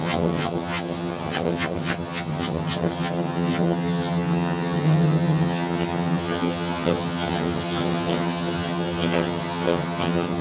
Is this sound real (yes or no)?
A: no